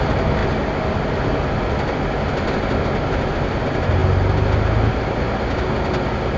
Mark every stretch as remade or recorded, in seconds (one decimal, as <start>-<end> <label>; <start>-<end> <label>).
0.0-6.4 recorded